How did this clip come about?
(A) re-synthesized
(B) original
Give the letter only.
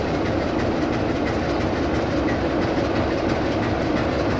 B